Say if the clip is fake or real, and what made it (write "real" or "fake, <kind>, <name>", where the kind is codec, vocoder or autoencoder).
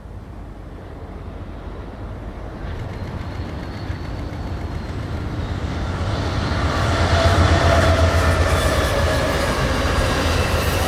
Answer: fake, vocoder, BigVGAN v2